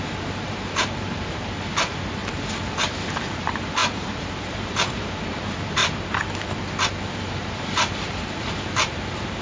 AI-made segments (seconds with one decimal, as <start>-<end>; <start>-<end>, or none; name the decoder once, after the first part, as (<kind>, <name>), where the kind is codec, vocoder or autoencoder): 0.0-2.2 (vocoder, BigVGAN v2); 3.3-5.8; 7.1-9.4